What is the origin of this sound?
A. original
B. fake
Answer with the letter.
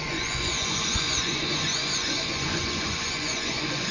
B